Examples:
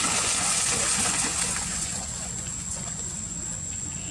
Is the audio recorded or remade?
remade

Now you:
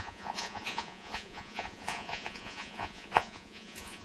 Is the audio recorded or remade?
remade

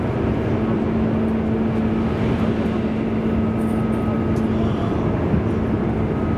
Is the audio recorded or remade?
recorded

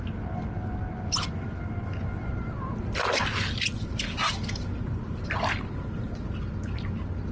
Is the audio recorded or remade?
recorded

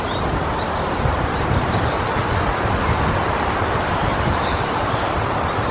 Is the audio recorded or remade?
remade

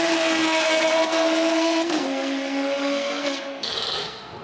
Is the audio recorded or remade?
remade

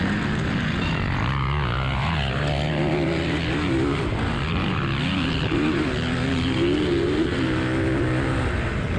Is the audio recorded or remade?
recorded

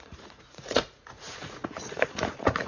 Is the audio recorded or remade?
remade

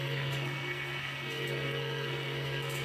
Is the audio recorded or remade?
remade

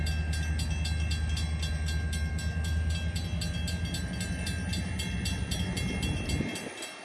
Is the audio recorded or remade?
recorded